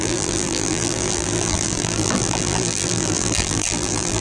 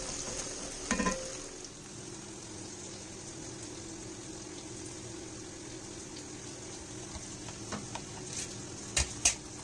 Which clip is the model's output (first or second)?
first